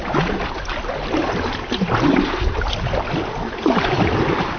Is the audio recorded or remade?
recorded